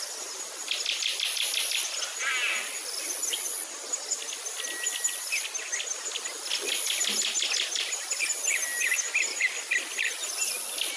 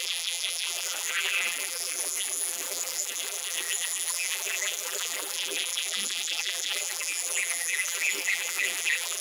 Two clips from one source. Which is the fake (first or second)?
second